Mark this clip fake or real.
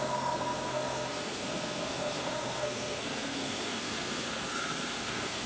fake